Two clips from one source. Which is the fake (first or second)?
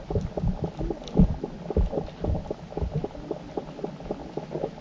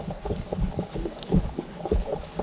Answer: second